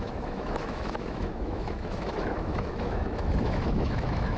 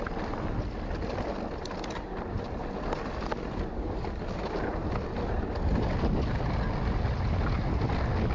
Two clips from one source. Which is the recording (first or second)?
second